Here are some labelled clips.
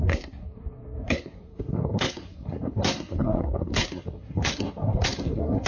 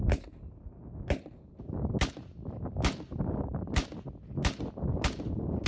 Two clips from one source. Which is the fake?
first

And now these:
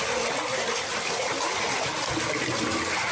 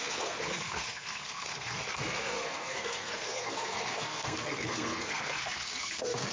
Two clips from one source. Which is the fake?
second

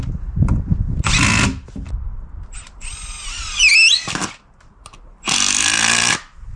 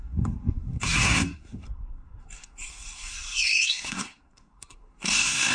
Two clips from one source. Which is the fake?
second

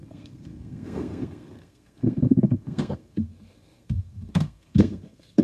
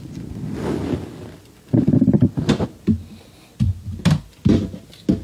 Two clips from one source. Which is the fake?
first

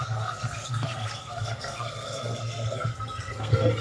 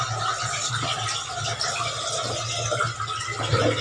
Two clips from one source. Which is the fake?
first